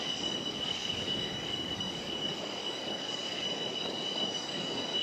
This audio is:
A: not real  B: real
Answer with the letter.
A